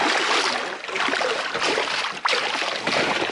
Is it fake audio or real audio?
real